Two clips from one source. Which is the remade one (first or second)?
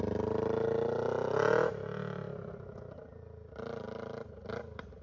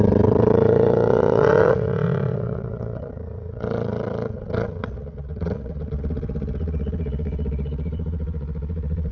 second